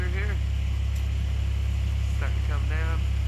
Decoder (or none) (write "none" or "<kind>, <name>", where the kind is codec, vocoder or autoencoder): none